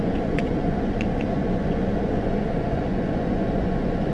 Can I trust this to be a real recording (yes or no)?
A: no